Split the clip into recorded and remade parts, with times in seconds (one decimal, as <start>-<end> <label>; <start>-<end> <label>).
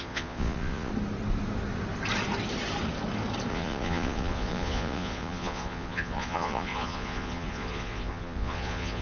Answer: 0.0-0.9 remade; 0.9-3.5 recorded; 3.5-9.0 remade